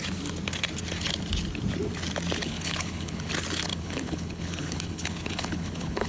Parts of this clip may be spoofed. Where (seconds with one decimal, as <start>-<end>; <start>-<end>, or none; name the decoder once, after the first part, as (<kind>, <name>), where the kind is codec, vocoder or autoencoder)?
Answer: 2.4-3.3 (codec, HILCodec); 3.7-6.1